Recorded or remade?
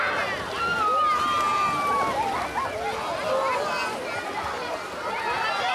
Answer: recorded